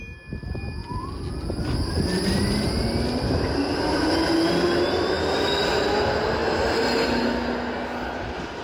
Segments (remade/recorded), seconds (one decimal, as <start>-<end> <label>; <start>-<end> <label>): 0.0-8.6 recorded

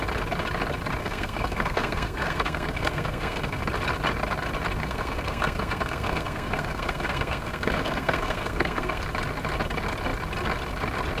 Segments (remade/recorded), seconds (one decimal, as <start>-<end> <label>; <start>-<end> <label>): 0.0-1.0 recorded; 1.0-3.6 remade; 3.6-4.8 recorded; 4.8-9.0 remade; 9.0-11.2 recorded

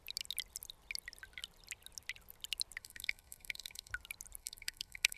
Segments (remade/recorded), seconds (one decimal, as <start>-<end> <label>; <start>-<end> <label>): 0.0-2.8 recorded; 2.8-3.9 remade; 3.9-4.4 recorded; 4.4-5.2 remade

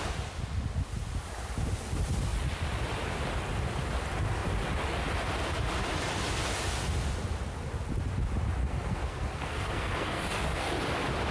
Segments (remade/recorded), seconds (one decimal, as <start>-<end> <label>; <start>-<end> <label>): 0.0-8.6 recorded; 8.6-10.7 remade; 10.7-11.3 recorded

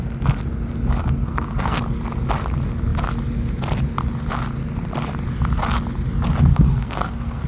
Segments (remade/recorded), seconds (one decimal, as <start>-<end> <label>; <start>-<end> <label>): 0.0-1.0 recorded; 1.0-1.8 remade; 1.8-6.5 recorded; 6.5-7.5 remade

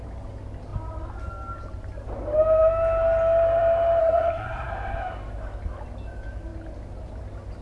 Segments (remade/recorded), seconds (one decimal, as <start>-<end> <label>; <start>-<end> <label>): 0.0-4.0 recorded; 4.0-4.7 remade; 4.7-7.6 recorded